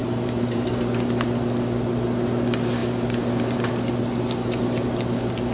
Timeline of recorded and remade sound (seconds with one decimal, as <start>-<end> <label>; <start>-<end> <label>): 0.0-0.7 remade; 0.7-5.5 recorded